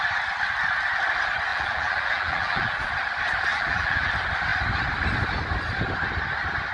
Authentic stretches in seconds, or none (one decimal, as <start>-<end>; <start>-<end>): 0.0-1.5; 2.9-3.5; 4.1-6.7